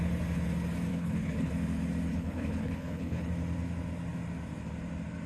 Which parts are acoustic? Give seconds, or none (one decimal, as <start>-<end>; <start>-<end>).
0.0-0.9; 1.5-2.1; 3.3-5.3